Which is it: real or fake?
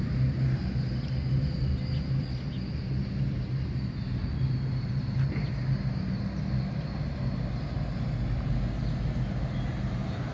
real